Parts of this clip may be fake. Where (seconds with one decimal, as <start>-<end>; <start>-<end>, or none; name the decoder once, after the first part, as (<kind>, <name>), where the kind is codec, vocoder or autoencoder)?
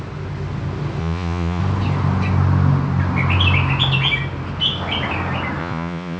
1.0-1.6 (vocoder, Vocos); 5.6-6.2